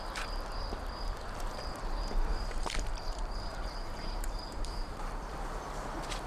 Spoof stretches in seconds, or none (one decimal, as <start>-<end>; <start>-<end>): 2.3-5.4